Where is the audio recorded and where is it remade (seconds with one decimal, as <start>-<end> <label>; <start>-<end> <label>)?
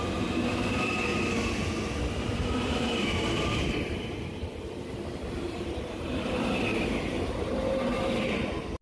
0.0-1.1 remade; 1.1-2.2 recorded; 2.2-7.9 remade; 7.9-8.8 recorded